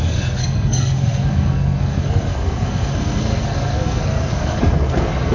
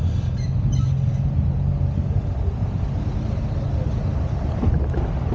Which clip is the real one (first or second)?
second